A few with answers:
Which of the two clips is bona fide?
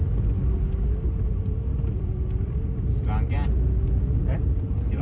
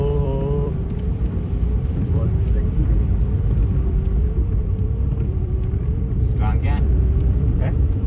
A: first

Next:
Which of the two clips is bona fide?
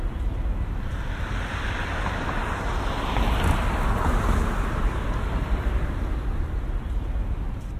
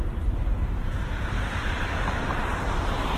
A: first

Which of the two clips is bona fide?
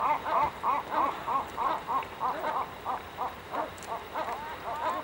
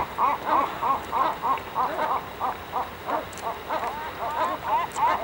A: second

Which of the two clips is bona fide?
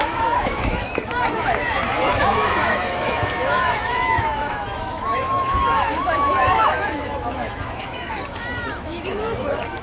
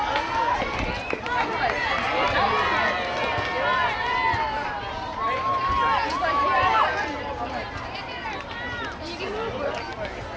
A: second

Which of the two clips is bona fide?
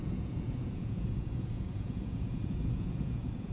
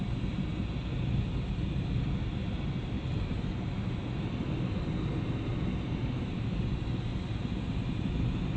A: second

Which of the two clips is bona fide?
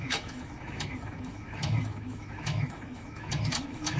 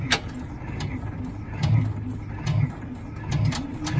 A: second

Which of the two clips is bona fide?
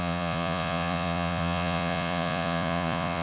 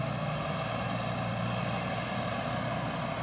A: second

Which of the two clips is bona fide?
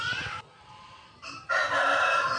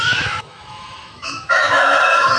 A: first